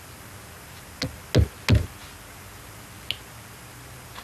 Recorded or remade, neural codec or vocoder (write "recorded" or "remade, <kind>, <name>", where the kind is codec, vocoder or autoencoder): recorded